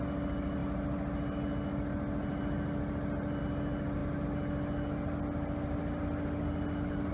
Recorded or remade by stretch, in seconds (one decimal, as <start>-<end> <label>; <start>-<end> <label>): 0.0-7.1 recorded